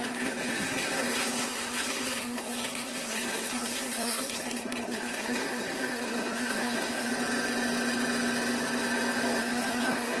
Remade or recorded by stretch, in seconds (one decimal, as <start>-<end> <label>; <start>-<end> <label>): 0.0-7.1 remade; 7.1-9.4 recorded; 9.4-10.2 remade